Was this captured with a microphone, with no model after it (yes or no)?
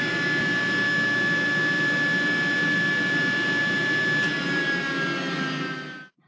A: yes